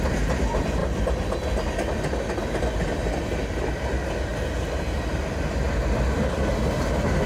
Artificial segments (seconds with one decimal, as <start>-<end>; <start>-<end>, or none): none